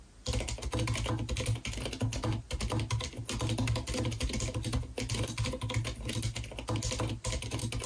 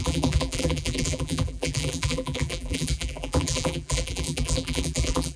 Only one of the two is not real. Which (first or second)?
second